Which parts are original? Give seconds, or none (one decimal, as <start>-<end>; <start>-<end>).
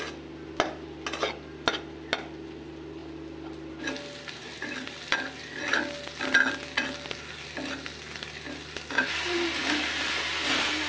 0.0-10.9